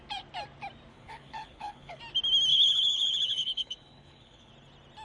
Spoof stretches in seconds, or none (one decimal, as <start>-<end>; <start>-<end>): 0.9-2.0; 2.5-4.5